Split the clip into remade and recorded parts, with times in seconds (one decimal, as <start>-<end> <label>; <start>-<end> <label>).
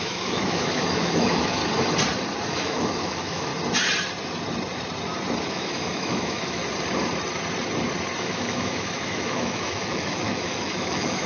0.0-1.6 remade; 1.6-2.5 recorded; 2.5-3.5 remade; 3.5-5.5 recorded; 5.5-6.6 remade; 6.6-8.2 recorded; 8.2-11.3 remade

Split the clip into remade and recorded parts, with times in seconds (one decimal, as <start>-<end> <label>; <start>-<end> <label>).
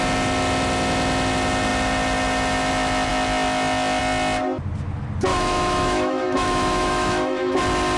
0.0-5.3 recorded; 5.3-7.6 remade; 7.6-8.0 recorded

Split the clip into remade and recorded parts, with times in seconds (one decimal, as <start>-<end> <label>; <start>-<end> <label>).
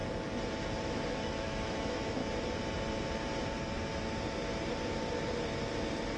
0.0-0.8 recorded; 0.8-2.2 remade; 2.2-6.2 recorded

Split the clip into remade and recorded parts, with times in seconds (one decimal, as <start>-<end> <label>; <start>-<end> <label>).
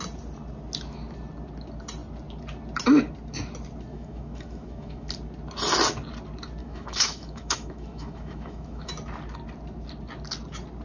0.0-3.9 recorded; 3.9-5.1 remade; 5.1-6.6 recorded; 6.6-8.9 remade; 8.9-10.8 recorded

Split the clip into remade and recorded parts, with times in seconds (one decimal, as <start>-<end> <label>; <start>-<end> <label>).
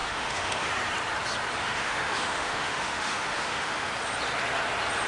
0.0-0.7 remade; 0.7-1.6 recorded; 1.6-3.9 remade; 3.9-5.1 recorded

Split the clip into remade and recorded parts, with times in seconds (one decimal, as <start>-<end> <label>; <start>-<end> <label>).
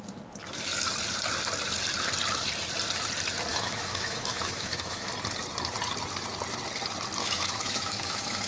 0.0-3.5 recorded; 3.5-5.1 remade; 5.1-7.2 recorded; 7.2-8.5 remade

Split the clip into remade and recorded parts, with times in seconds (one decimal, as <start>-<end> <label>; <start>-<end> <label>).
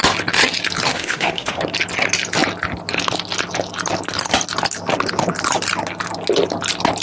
0.0-0.9 recorded; 0.9-1.6 remade; 1.6-7.0 recorded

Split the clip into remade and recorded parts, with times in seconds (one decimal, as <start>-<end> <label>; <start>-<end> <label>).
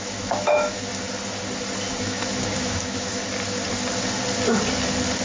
0.0-0.9 remade; 0.9-2.0 recorded; 2.0-3.2 remade; 3.2-5.2 recorded